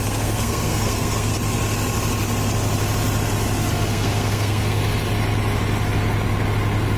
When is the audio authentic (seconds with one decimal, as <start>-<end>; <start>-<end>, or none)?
1.3-3.7; 4.8-7.0